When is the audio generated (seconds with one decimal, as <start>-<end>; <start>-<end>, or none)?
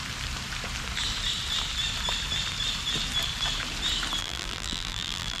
4.2-5.4